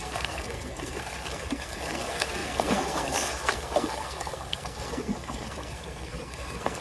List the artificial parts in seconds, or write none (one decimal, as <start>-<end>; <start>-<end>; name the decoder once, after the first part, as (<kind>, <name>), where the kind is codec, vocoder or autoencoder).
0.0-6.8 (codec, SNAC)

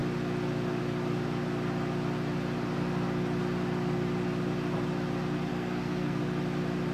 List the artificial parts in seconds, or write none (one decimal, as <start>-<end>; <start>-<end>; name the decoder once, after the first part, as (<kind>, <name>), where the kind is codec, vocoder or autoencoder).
5.5-6.2 (codec, SNAC)

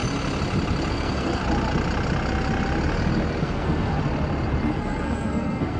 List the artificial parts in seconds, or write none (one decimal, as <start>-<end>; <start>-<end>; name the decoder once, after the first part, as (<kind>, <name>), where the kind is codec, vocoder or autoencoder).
0.9-1.4 (codec, SNAC); 3.4-4.0; 4.7-5.8